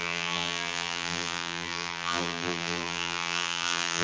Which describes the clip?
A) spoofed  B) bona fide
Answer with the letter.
A